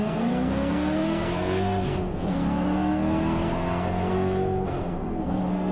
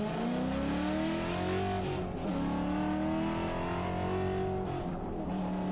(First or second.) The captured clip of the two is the second